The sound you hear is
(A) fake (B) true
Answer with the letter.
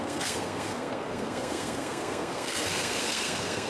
A